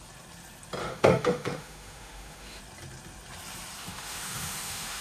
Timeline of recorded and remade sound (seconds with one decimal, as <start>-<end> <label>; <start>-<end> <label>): 0.0-0.8 recorded; 0.8-2.6 remade; 2.6-3.8 recorded; 3.8-5.0 remade